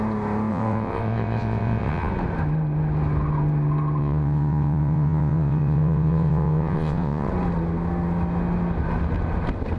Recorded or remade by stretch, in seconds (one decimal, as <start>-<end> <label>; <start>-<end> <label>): 0.0-0.5 recorded; 0.5-2.1 remade; 2.1-4.0 recorded; 4.0-7.3 remade; 7.3-9.8 recorded